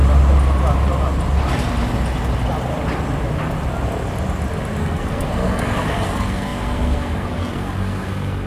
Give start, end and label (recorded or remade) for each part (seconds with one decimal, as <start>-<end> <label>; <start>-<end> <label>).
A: 0.0-4.8 recorded; 4.8-8.5 remade